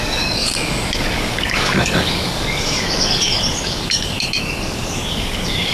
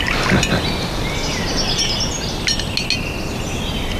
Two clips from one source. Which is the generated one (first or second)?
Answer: first